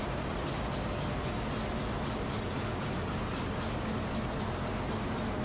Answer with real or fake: real